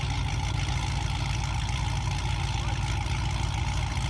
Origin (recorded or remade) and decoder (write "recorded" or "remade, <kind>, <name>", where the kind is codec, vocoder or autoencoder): recorded